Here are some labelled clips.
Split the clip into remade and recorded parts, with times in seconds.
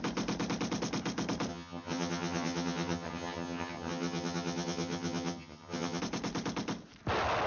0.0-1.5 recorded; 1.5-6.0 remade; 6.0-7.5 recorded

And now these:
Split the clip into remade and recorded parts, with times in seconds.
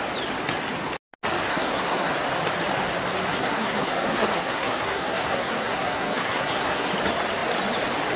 0.0-1.5 recorded; 1.5-2.1 remade; 2.1-3.3 recorded; 3.3-6.9 remade; 6.9-8.2 recorded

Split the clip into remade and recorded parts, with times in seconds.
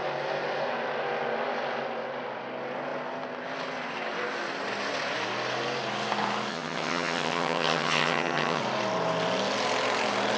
0.0-6.5 recorded; 6.5-8.6 remade; 8.6-10.4 recorded